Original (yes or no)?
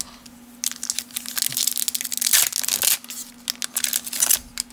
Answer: yes